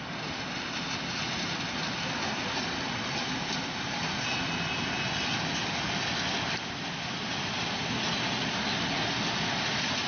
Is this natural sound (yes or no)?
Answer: yes